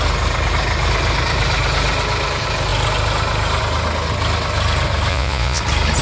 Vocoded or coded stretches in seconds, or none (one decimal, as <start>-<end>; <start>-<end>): 5.1-5.6